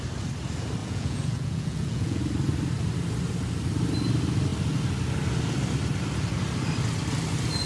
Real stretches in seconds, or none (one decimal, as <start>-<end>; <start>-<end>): 0.0-0.8; 2.2-7.7